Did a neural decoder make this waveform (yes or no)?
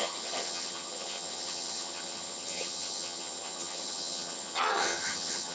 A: yes